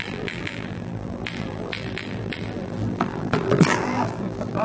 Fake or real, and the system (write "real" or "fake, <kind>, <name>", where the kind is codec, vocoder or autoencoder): fake, vocoder, BigVGAN v2